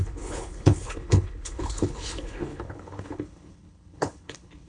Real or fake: fake